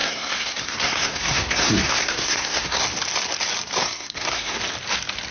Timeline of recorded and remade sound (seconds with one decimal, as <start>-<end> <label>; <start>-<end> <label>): 0.0-2.8 remade; 2.8-3.8 recorded; 3.8-4.6 remade; 4.6-5.3 recorded